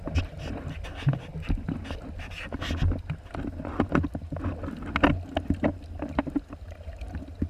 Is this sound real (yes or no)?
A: yes